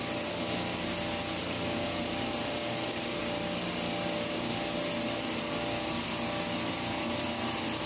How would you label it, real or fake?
real